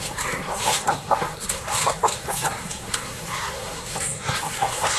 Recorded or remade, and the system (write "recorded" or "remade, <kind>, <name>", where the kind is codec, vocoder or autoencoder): remade, codec, SNAC